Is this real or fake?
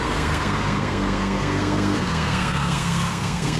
fake